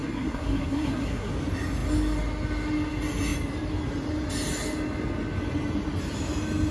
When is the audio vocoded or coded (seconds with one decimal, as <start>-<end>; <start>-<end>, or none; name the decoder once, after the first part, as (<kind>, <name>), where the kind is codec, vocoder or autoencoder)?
0.0-1.3 (codec, SNAC)